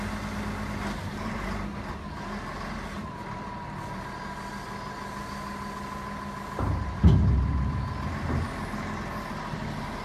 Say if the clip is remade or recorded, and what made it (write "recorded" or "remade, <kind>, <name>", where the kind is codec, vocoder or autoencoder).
recorded